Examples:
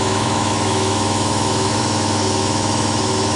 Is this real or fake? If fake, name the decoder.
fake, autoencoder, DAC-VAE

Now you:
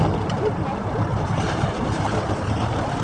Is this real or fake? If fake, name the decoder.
fake, vocoder, BigVGAN v2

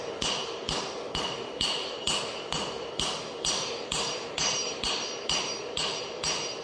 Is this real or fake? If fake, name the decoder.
real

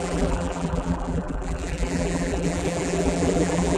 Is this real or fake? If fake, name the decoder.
fake, vocoder, BigVGAN v2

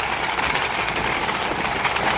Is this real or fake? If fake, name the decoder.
real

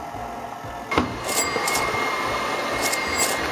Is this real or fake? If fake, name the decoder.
real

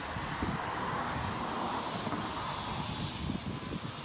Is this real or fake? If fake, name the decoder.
real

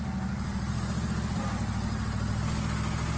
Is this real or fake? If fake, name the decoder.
real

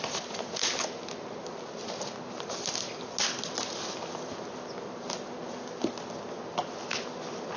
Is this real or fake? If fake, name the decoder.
real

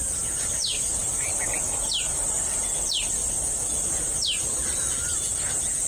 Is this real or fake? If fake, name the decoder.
real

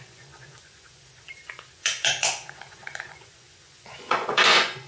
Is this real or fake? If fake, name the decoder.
fake, vocoder, Vocos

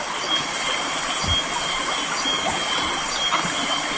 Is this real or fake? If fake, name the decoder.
real